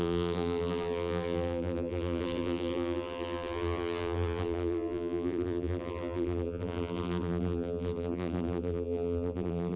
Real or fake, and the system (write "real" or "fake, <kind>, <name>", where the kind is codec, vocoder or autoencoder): fake, vocoder, BigVGAN v2